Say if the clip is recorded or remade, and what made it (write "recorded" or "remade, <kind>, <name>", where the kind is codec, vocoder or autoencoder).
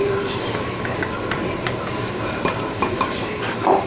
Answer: remade, vocoder, BigVGAN v2